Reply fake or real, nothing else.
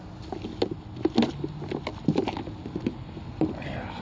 real